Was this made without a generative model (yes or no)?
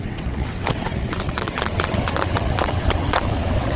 no